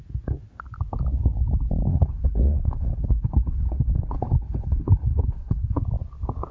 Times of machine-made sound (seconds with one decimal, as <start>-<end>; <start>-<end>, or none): 1.9-5.8